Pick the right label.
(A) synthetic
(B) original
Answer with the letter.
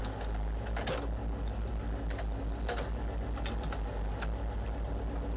B